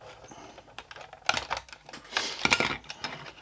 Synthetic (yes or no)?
no